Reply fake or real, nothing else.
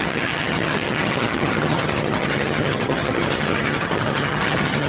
fake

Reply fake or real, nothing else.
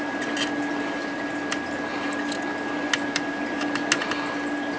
real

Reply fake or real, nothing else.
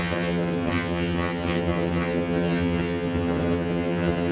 fake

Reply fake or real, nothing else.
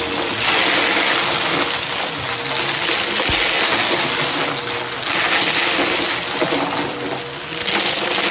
real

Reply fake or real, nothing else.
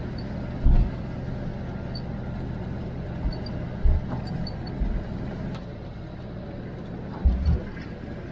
real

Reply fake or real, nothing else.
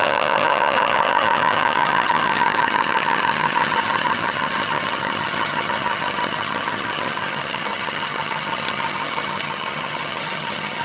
fake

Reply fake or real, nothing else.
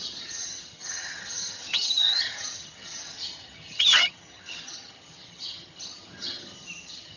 fake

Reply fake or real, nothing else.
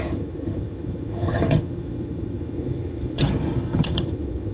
fake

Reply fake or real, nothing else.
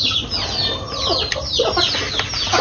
real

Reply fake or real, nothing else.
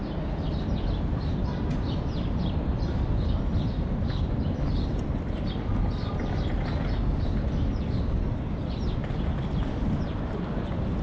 real